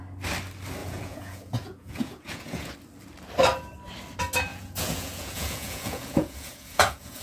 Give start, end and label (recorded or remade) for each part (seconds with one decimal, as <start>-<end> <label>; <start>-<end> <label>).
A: 0.0-0.8 recorded; 0.8-2.7 remade; 2.7-4.5 recorded; 4.5-7.2 remade